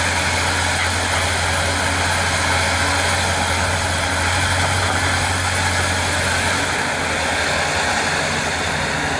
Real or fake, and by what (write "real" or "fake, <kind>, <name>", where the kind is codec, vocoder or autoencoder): real